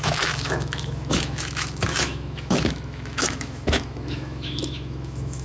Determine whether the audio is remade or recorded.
remade